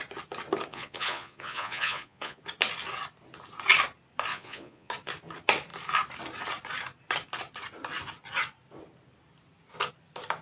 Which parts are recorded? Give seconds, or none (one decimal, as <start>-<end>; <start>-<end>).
0.0-0.7; 2.4-4.3; 4.9-10.4